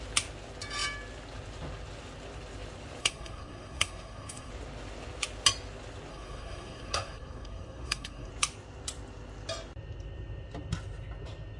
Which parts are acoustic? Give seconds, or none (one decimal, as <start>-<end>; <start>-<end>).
0.0-3.0; 4.5-6.1; 8.3-11.6